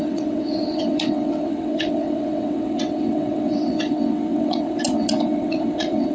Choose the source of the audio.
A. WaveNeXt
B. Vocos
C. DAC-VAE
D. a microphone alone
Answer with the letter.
A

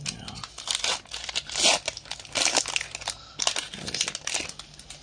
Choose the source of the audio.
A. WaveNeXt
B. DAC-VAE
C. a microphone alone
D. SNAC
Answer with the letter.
C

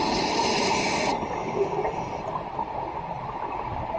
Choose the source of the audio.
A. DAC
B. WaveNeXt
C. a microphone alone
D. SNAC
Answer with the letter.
C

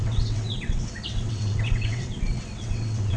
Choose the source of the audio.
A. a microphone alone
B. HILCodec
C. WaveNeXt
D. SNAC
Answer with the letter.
C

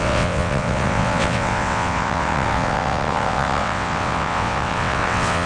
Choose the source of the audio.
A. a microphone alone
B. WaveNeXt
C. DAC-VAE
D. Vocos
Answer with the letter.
B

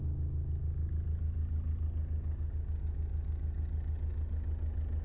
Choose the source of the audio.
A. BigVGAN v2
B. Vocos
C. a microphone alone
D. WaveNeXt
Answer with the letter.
C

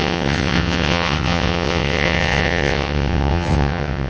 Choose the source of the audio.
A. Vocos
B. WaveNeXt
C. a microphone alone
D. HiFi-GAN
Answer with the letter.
B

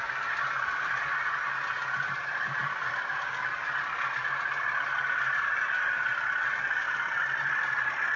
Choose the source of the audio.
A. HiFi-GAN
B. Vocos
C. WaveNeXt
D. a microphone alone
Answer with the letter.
D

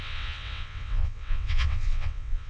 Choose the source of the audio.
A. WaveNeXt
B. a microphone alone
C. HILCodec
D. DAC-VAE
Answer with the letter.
A